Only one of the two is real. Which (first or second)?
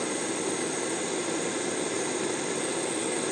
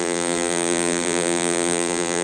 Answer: first